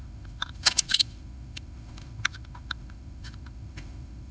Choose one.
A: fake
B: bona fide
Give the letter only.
A